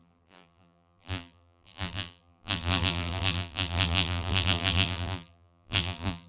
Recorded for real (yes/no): no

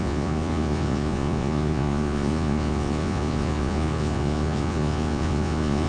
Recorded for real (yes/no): no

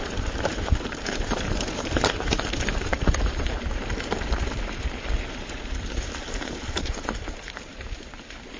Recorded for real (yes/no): no